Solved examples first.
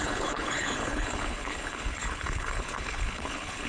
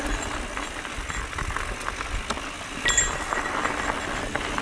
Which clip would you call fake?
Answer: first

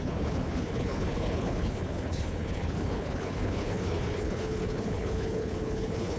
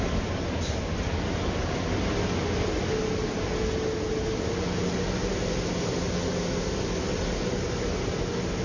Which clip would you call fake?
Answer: first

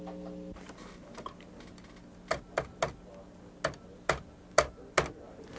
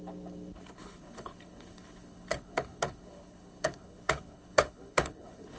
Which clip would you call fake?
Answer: second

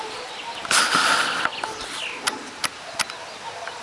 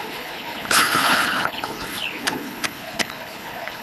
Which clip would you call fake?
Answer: second